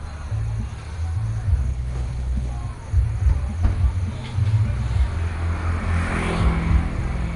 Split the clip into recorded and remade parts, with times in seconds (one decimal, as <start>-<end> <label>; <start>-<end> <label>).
0.0-1.7 recorded; 1.7-2.5 remade; 2.5-7.4 recorded